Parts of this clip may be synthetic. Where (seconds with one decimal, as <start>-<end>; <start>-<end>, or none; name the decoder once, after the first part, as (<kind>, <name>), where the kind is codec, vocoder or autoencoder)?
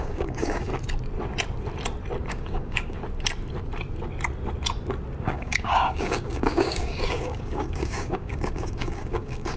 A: 0.0-0.7 (codec, DAC); 2.3-3.0; 5.2-9.6